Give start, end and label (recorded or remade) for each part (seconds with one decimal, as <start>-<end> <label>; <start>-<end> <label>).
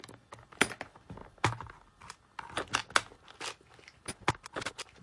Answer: 0.0-5.0 recorded